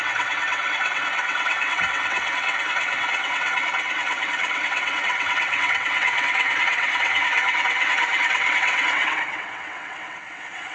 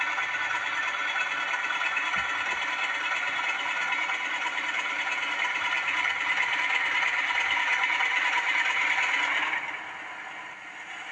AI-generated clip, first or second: first